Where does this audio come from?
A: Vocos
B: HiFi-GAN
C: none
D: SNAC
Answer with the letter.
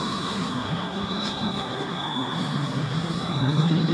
D